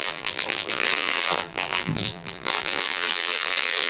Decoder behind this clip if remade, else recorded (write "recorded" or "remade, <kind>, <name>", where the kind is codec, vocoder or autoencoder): remade, vocoder, BigVGAN v2